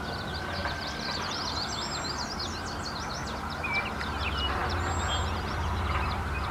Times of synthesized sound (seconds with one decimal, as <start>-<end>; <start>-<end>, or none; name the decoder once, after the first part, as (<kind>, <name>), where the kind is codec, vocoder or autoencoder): none